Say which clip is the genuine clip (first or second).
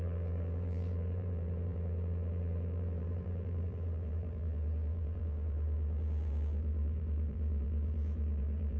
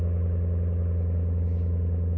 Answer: second